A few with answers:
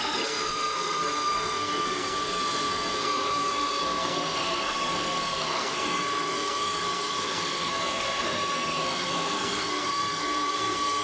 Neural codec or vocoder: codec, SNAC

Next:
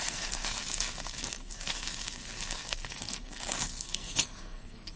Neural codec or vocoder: codec, SNAC